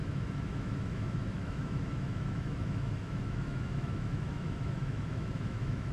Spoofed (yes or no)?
yes